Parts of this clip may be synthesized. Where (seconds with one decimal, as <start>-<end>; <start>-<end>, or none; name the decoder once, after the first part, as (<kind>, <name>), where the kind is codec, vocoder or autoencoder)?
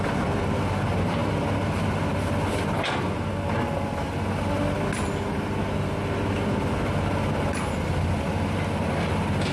none